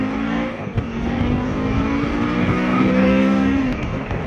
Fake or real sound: fake